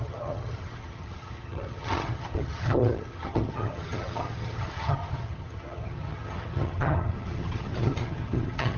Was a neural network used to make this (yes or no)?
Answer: yes